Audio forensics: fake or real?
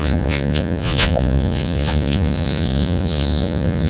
fake